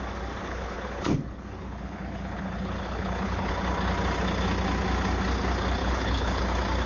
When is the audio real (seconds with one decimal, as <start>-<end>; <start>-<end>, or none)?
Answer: 0.0-0.4; 3.5-5.8; 6.4-6.9